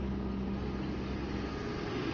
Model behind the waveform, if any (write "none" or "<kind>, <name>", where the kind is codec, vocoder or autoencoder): none